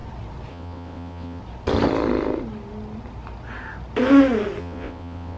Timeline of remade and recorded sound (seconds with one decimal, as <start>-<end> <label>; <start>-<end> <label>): 0.0-0.5 recorded; 0.5-1.4 remade; 1.4-4.6 recorded; 4.6-5.4 remade